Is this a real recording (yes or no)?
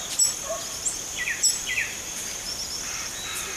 no